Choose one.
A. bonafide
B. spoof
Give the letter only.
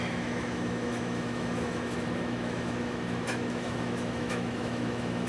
B